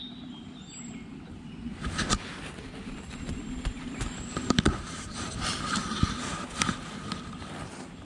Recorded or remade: remade